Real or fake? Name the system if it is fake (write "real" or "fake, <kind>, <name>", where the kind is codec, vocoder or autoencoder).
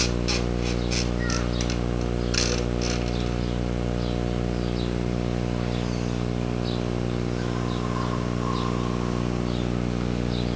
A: real